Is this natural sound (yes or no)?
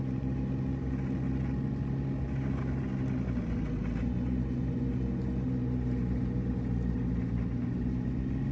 yes